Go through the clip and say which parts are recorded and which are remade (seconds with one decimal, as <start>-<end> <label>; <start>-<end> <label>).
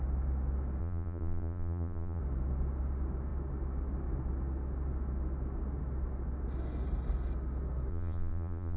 0.0-0.8 recorded; 0.8-2.2 remade; 2.2-7.9 recorded; 7.9-8.8 remade